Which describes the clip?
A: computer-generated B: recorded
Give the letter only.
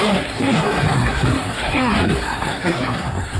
A